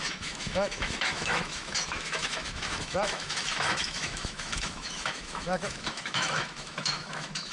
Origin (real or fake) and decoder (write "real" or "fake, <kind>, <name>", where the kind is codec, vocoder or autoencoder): fake, autoencoder, DAC-VAE